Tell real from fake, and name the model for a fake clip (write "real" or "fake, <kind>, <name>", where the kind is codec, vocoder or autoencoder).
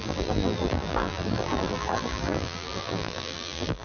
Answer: fake, vocoder, BigVGAN v2